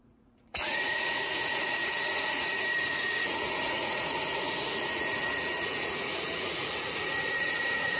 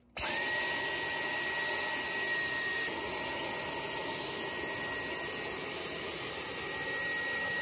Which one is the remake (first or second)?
first